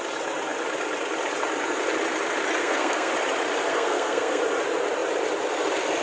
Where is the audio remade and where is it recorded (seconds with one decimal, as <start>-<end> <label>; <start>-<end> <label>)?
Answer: 0.0-2.6 recorded; 2.6-3.1 remade; 3.1-3.7 recorded; 3.7-4.4 remade; 4.4-6.0 recorded